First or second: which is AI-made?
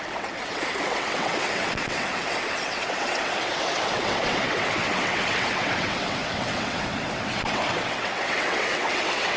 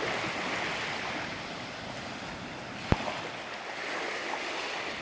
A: first